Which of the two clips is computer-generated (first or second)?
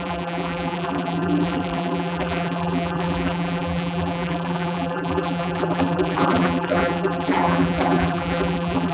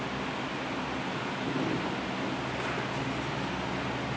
first